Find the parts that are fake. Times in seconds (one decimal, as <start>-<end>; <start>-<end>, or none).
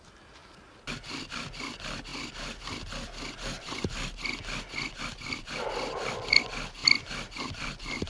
none